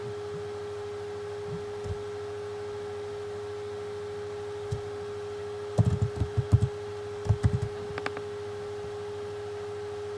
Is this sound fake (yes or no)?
no